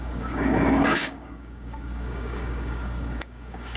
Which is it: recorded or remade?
remade